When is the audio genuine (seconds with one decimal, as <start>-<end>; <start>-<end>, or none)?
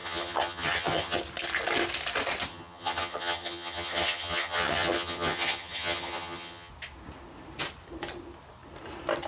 1.2-2.5; 6.7-9.3